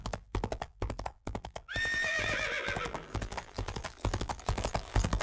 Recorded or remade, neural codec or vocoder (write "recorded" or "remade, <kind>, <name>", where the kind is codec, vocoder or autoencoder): remade, vocoder, BigVGAN v2